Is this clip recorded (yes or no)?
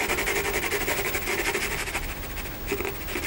yes